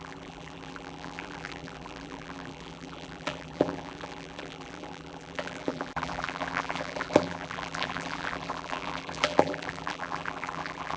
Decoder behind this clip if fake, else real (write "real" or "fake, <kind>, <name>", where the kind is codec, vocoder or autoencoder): fake, vocoder, BigVGAN v2